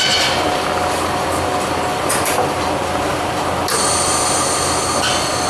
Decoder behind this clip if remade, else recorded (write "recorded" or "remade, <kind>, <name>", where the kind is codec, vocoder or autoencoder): recorded